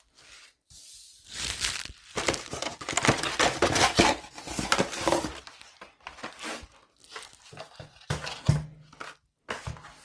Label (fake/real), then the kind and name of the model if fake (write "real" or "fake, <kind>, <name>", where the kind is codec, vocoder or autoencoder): real